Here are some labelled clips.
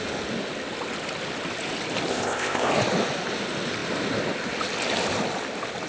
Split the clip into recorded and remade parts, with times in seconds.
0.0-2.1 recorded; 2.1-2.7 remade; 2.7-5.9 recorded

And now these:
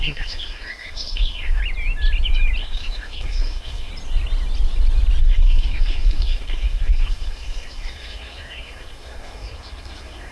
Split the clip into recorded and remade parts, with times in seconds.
0.0-1.6 remade; 1.6-2.6 recorded; 2.6-3.9 remade; 3.9-5.2 recorded; 5.2-10.3 remade

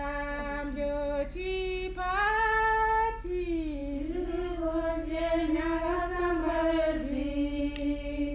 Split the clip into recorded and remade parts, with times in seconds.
0.0-8.3 recorded

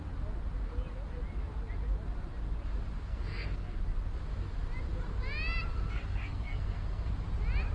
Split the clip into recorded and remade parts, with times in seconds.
0.0-3.1 recorded; 3.1-3.8 remade; 3.8-5.7 recorded; 5.7-7.1 remade; 7.1-7.7 recorded